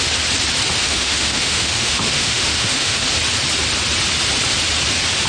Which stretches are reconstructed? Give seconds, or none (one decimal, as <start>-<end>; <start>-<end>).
0.8-3.0

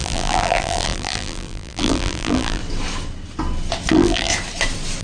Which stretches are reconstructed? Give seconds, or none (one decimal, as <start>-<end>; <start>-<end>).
0.0-2.6; 3.9-4.3

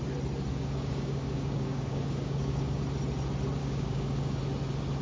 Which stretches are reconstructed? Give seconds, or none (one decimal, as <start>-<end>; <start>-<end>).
0.5-2.8; 3.6-4.4

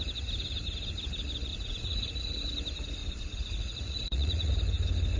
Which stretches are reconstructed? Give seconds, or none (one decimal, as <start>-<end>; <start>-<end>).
1.5-2.1; 3.0-4.5

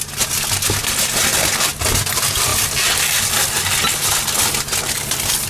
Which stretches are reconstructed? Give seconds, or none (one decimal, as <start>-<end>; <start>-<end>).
2.5-3.3